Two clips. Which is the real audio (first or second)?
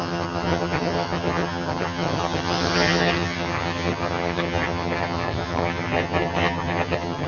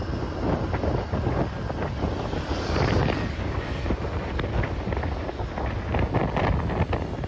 second